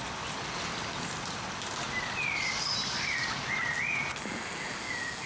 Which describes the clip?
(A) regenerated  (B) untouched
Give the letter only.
B